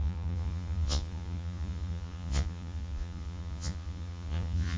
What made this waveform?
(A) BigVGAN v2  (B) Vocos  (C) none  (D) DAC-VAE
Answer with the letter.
B